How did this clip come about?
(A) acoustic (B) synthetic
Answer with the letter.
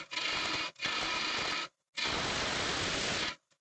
A